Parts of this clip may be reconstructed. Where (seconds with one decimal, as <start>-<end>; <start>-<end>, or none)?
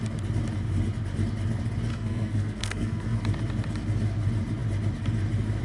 1.9-3.2